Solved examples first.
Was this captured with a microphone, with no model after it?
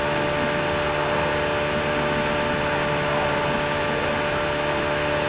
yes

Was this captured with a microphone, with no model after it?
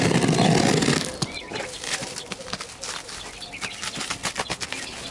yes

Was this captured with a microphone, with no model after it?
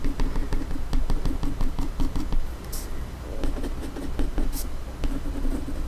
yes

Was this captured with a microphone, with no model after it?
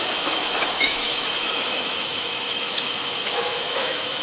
no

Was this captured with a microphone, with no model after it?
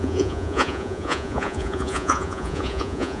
no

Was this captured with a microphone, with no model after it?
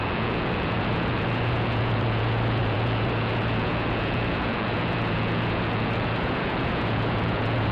no